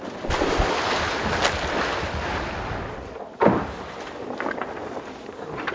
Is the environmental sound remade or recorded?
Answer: recorded